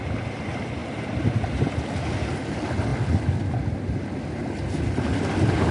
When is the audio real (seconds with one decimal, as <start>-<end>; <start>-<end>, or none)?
0.0-5.7